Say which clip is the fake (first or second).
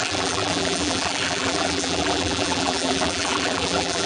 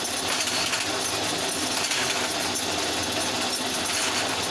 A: first